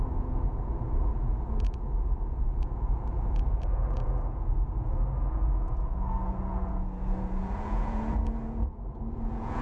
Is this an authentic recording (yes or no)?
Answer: no